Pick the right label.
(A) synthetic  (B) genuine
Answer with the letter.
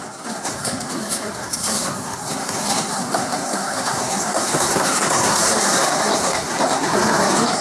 A